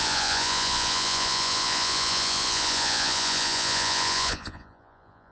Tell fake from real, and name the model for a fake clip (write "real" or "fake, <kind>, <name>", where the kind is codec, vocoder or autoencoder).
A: fake, vocoder, Vocos